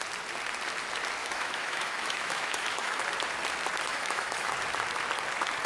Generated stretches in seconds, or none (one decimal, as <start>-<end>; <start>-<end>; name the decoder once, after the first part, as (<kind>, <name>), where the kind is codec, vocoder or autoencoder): 1.2-3.0 (autoencoder, DAC-VAE); 3.9-4.5